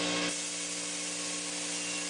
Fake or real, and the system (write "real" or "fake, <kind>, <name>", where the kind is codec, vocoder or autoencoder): real